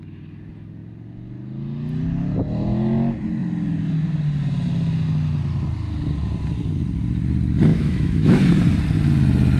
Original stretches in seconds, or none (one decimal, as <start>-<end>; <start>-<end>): 0.0-7.7; 8.4-9.6